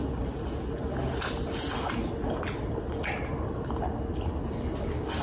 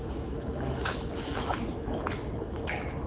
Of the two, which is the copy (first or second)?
second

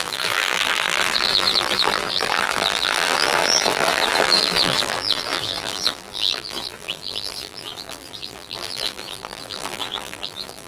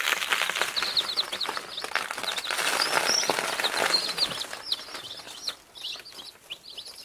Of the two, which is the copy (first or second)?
first